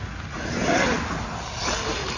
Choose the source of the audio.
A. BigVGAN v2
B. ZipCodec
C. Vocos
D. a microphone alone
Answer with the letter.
D